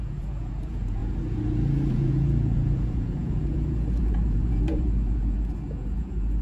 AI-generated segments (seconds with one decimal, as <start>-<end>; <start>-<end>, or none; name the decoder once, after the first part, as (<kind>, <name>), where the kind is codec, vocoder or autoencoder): 0.0-1.0 (vocoder, Vocos); 1.9-6.4